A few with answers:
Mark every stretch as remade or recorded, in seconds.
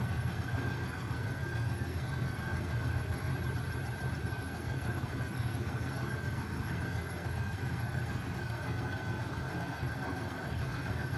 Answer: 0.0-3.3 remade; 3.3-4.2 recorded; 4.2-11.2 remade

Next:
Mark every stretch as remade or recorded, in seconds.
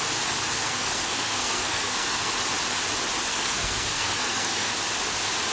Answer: 0.0-0.5 recorded; 0.5-2.3 remade; 2.3-3.3 recorded; 3.3-4.7 remade; 4.7-5.5 recorded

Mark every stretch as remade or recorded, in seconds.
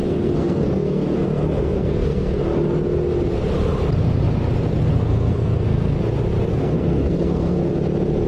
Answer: 0.0-2.4 remade; 2.4-4.9 recorded; 4.9-6.0 remade; 6.0-6.5 recorded; 6.5-7.7 remade; 7.7-8.3 recorded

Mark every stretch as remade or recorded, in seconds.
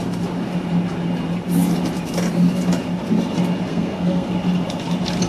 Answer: 0.0-3.7 recorded; 3.7-4.3 remade; 4.3-5.3 recorded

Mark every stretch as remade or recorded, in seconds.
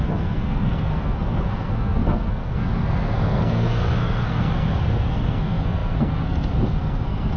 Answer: 0.0-7.4 remade